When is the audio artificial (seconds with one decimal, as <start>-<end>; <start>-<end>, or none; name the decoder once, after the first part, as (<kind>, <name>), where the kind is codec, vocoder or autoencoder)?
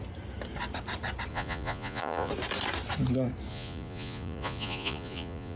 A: 1.3-2.3 (vocoder, Vocos); 3.5-5.6